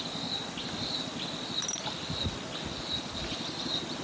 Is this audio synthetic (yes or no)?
no